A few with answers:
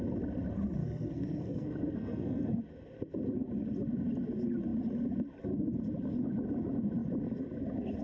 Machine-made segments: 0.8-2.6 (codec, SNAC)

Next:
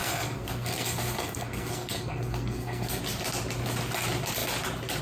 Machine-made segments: 0.0-3.0 (codec, SNAC)

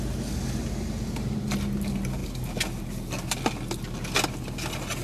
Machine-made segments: none

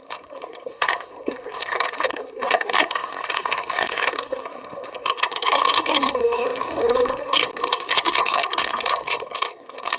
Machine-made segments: 0.0-10.0 (codec, SNAC)

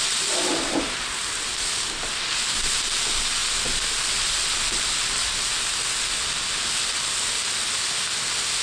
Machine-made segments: none

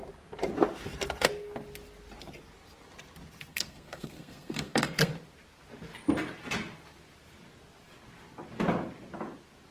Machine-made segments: 3.5-5.1 (codec, SNAC)

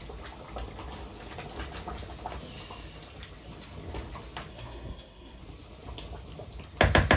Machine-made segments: 4.5-5.4 (codec, SNAC)

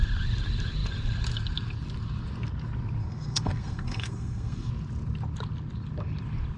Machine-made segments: 3.0-4.7 (codec, SNAC)